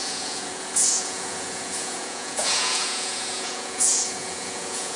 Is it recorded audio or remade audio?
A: remade